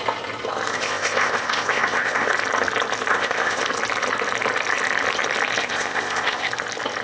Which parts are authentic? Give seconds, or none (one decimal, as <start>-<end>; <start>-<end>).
0.0-0.7; 2.3-3.1; 3.6-5.6; 6.5-7.0